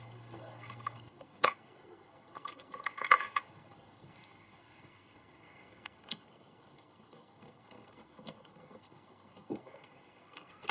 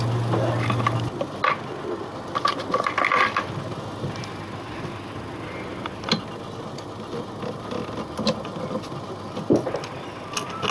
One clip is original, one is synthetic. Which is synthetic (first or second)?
first